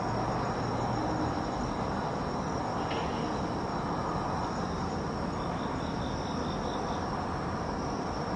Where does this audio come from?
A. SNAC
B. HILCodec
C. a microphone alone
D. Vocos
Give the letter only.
C